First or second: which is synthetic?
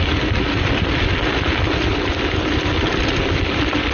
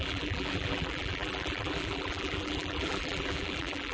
second